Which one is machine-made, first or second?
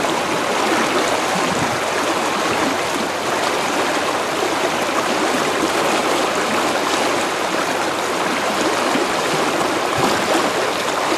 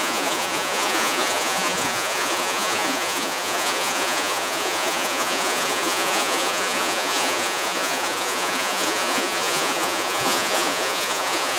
second